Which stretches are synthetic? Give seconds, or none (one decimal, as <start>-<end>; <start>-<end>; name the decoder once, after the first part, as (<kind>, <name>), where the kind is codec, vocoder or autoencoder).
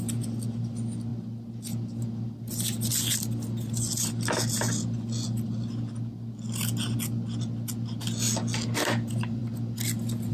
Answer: none